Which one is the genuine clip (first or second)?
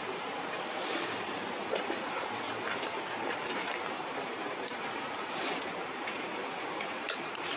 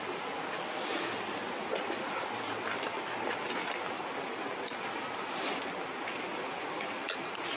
second